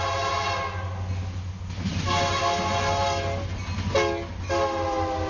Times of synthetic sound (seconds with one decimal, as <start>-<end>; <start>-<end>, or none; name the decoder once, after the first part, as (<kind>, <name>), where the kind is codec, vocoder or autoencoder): none